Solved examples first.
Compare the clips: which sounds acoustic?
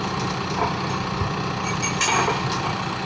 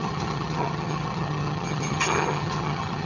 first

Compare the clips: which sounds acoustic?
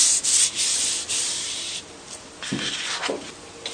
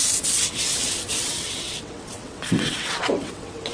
first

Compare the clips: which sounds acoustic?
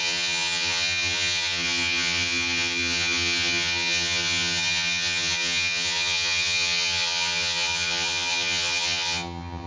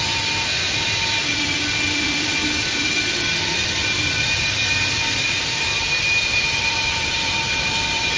second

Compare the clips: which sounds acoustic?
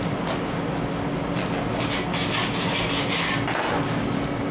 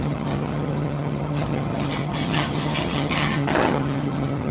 first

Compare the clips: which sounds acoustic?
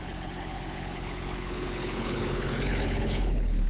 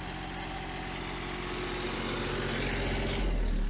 second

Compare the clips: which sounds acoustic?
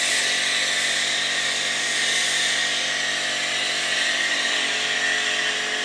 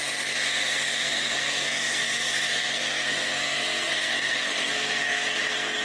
first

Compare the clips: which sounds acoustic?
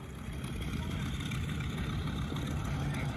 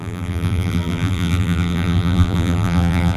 first